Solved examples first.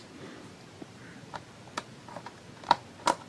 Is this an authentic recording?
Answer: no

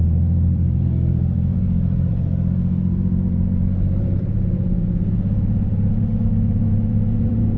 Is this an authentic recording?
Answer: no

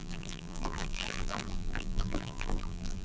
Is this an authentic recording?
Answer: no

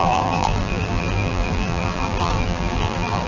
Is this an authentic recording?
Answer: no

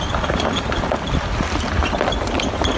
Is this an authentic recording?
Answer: no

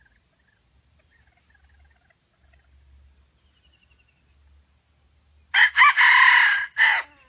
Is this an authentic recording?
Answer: yes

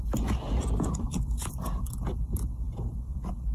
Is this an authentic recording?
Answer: no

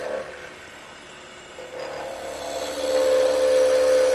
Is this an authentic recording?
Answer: yes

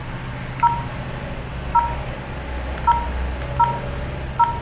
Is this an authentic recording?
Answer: yes